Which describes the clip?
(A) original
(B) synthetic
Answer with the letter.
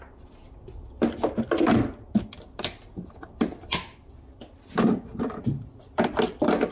A